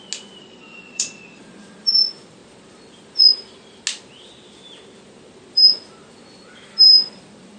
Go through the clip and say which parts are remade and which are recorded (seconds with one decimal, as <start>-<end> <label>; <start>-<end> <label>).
0.0-0.4 recorded; 0.4-1.4 remade; 1.4-7.6 recorded